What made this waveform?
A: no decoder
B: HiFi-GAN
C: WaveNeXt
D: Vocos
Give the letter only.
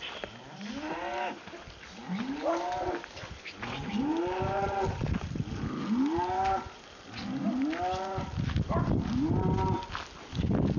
A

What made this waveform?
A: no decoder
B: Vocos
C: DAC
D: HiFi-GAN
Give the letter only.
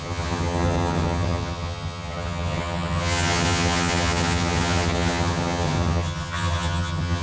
D